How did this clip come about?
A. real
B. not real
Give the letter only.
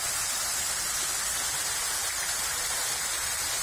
A